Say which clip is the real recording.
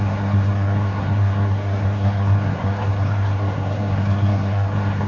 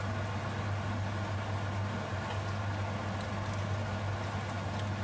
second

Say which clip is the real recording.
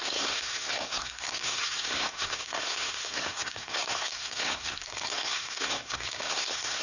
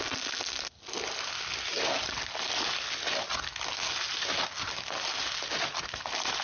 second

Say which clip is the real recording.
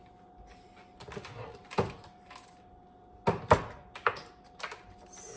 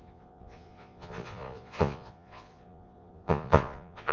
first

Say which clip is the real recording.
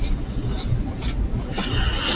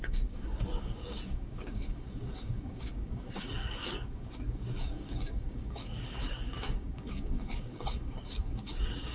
first